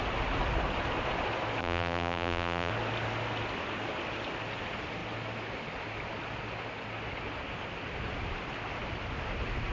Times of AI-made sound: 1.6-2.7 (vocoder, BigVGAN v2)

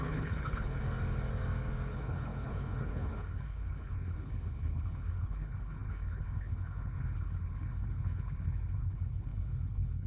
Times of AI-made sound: 0.0-0.8 (codec, HILCodec); 1.9-10.1

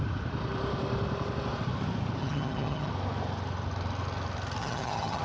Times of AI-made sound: 2.2-2.9 (vocoder, HiFi-GAN); 4.6-5.2